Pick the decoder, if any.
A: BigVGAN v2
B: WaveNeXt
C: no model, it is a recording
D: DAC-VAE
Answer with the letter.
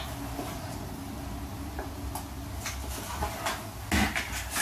C